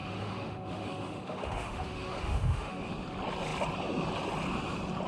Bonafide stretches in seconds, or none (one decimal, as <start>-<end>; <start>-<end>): 2.9-5.1